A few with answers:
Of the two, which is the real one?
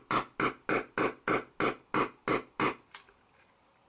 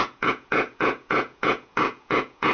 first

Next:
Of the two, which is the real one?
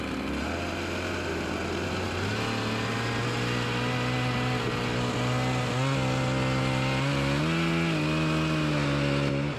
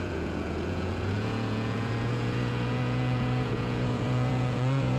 first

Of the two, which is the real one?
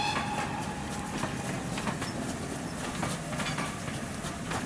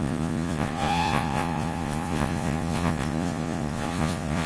first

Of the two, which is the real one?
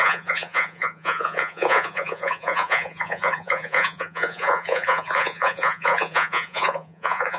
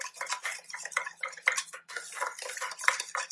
second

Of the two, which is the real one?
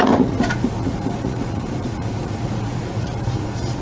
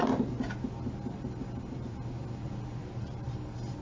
second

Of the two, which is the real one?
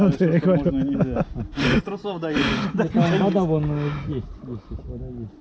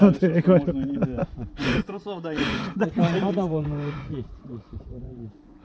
first